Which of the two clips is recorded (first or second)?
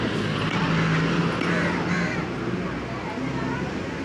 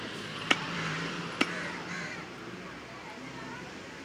first